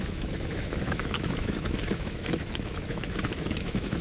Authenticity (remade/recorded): remade